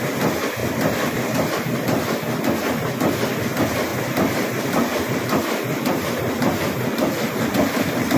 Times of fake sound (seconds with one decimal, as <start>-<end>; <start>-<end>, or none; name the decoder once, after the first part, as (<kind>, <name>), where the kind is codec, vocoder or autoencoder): 0.6-1.5 (vocoder, BigVGAN v2); 3.9-8.2